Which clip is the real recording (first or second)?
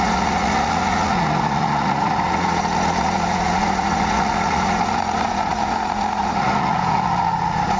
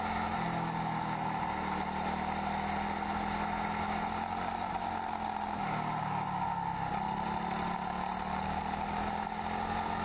second